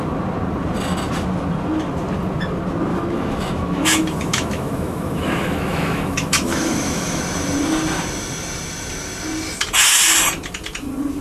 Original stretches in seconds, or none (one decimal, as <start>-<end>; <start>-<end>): 0.0-2.9; 7.2-11.2

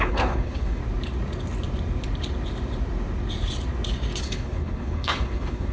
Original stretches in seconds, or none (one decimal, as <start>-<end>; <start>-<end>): 0.8-4.2

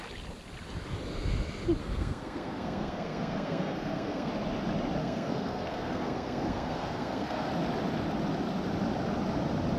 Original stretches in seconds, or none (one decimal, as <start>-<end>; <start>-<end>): 0.0-1.8; 4.3-5.0; 7.5-9.8

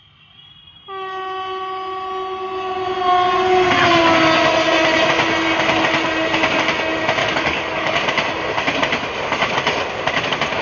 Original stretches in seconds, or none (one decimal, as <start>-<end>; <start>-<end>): 0.0-7.2; 8.0-10.6